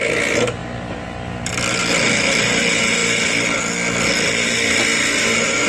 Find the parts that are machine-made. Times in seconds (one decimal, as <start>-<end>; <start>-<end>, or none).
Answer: none